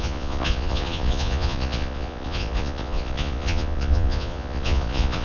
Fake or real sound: fake